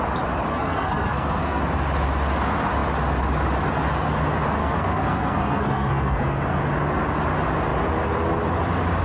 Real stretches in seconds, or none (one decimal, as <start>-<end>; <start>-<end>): 0.0-0.5; 1.6-4.6; 6.6-9.0

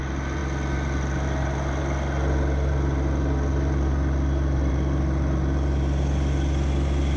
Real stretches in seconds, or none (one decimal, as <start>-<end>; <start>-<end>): 0.0-7.2

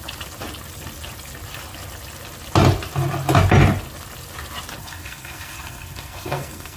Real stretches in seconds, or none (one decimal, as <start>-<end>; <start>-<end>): 0.0-4.8

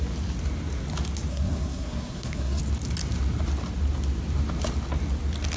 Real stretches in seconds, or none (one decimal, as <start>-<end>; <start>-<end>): 0.0-1.3; 2.6-5.6